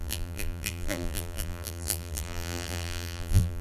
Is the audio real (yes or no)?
no